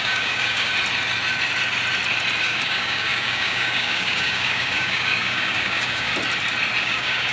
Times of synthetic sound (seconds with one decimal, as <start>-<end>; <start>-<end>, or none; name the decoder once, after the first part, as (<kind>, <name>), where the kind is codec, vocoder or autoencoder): 0.0-0.7 (codec, DAC); 2.4-6.1; 6.8-7.3